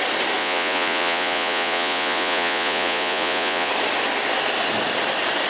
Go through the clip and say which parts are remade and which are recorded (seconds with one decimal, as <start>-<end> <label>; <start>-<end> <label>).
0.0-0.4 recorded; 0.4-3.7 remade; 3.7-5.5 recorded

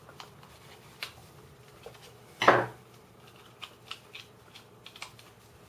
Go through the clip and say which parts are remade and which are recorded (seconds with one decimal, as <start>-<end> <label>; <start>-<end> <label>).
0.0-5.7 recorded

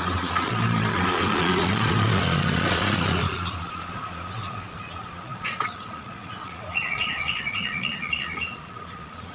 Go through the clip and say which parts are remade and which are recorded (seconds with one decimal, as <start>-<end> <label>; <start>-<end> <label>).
0.0-9.3 remade

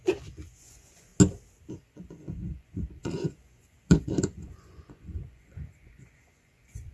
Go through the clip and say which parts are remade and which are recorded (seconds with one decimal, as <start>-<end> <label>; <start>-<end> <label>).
0.0-1.1 remade; 1.1-1.7 recorded; 1.7-6.9 remade

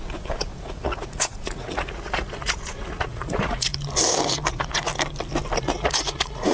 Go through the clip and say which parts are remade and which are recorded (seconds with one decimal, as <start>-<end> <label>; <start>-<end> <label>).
0.0-3.7 remade; 3.7-4.5 recorded; 4.5-4.9 remade; 4.9-5.6 recorded; 5.6-6.5 remade

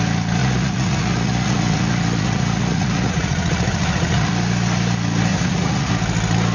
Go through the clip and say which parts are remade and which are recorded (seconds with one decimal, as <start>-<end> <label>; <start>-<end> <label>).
0.0-0.4 recorded; 0.4-4.3 remade; 4.3-5.3 recorded; 5.3-5.9 remade; 5.9-6.5 recorded